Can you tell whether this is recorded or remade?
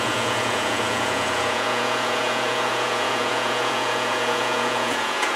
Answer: remade